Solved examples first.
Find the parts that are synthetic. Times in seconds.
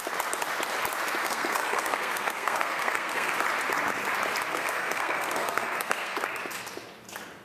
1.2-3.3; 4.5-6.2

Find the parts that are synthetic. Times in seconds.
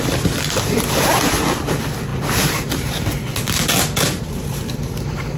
none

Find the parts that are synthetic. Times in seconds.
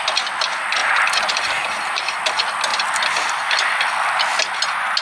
0.8-2.2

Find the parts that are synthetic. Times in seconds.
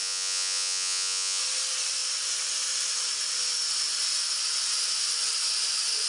0.0-1.4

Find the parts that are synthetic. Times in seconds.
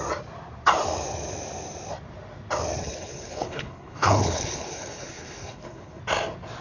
2.8-6.0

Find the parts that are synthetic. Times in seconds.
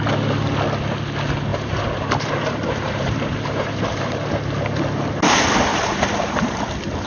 1.5-4.3; 5.7-6.6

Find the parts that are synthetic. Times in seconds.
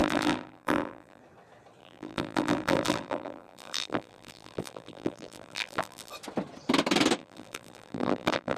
0.0-1.2; 1.8-6.1; 7.2-8.6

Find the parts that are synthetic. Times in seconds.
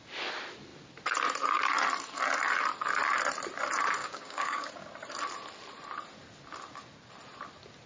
4.0-4.7